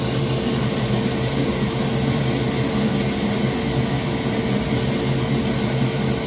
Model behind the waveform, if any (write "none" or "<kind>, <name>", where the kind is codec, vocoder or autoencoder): none